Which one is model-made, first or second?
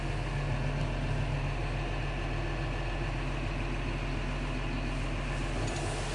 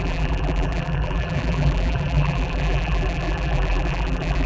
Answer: second